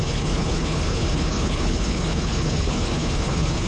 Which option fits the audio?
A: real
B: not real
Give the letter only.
B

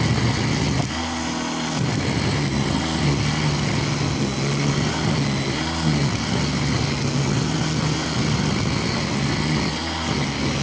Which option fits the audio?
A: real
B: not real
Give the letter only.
A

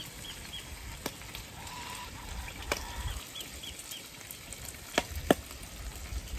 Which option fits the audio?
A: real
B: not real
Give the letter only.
A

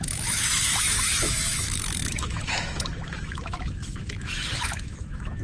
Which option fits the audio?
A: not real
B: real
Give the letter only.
A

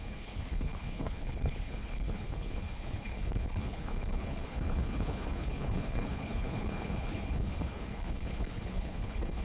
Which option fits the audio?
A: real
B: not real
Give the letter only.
B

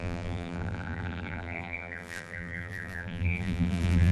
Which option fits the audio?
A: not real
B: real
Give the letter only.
A